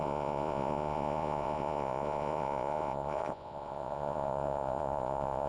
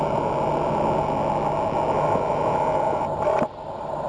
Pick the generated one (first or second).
first